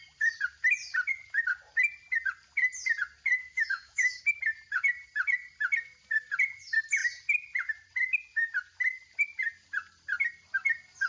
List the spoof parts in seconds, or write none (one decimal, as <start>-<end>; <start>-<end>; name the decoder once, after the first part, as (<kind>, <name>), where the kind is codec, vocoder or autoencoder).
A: 3.4-4.2 (autoencoder, DAC-VAE)